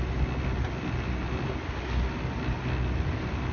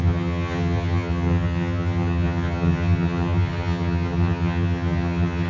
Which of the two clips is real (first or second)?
first